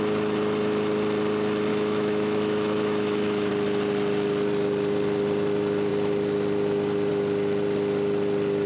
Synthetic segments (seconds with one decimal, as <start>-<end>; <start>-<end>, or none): 1.7-3.5